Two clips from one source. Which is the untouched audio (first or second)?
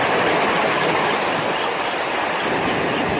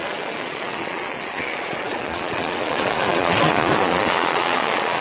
first